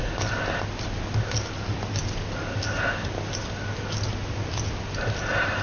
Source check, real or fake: real